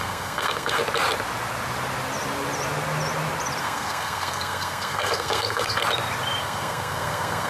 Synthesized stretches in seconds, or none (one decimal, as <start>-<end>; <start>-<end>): 0.0-0.8; 3.6-5.8; 6.4-7.5